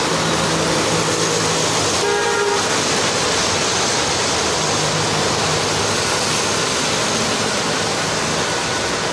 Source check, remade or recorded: recorded